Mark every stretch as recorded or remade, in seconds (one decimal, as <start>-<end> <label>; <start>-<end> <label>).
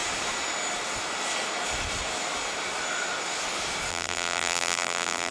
0.0-3.9 recorded; 3.9-5.3 remade